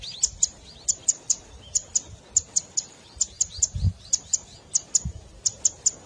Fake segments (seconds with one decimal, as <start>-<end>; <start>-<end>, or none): none